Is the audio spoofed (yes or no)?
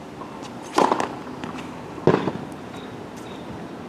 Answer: no